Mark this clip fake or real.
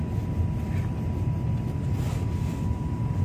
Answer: real